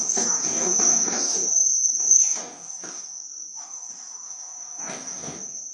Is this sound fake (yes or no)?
yes